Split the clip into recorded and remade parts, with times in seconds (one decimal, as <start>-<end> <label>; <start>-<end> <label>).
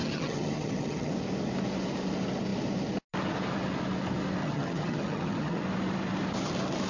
0.0-1.1 remade; 1.1-4.4 recorded; 4.4-5.6 remade; 5.6-6.9 recorded